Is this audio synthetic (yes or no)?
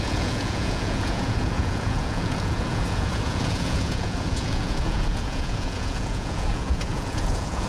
yes